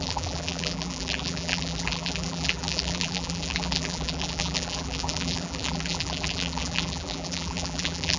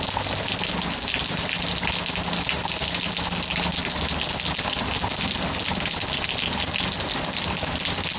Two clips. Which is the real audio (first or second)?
second